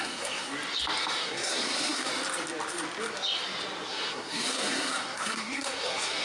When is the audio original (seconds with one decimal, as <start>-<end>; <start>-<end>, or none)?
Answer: 0.5-1.2; 2.1-3.9